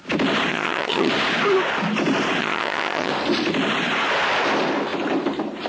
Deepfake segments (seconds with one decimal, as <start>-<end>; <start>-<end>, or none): 0.5-1.1; 2.4-3.1

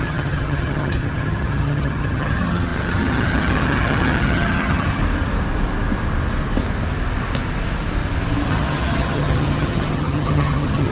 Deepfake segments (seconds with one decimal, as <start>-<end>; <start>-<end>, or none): 0.0-5.0; 8.5-10.9

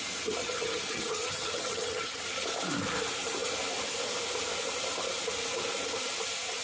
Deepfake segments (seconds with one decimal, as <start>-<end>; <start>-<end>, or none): 0.4-2.2

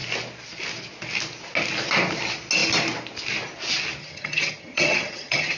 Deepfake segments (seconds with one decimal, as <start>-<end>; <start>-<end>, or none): 4.0-5.6

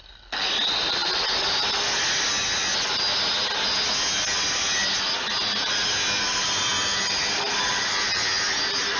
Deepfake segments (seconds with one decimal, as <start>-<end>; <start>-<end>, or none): none

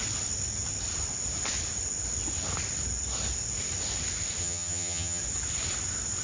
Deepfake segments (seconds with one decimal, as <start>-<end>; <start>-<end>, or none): 4.4-5.2